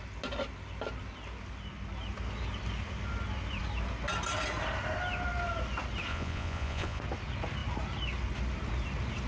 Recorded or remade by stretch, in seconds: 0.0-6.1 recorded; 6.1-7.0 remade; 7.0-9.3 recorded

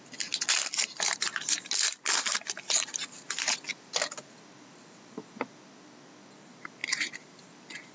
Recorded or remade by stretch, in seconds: 0.0-3.7 recorded; 3.7-4.3 remade; 4.3-6.8 recorded; 6.8-7.4 remade; 7.4-7.9 recorded

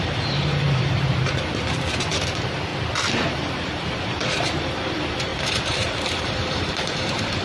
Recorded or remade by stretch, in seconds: 0.0-2.7 remade; 2.7-3.3 recorded; 3.3-7.4 remade

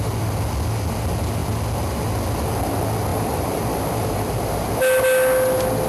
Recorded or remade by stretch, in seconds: 0.0-3.1 recorded; 3.1-4.7 remade; 4.7-5.9 recorded